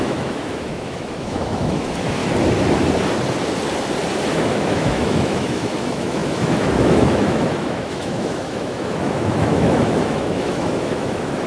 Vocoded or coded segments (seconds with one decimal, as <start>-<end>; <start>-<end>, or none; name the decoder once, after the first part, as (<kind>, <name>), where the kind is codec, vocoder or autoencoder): 0.0-2.2 (autoencoder, DAC-VAE); 4.3-11.5